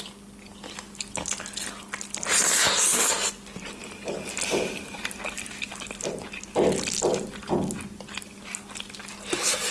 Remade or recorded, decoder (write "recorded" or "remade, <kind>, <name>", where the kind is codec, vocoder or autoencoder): recorded